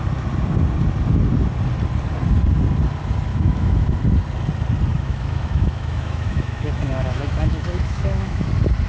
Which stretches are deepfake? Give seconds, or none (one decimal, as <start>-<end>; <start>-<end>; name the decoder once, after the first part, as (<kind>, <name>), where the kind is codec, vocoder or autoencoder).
3.3-3.9 (autoencoder, DAC-VAE); 4.9-8.5